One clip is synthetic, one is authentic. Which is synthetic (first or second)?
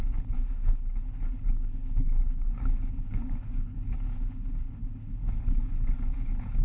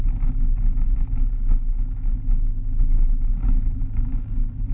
first